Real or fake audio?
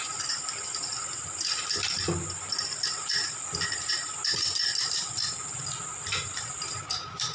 real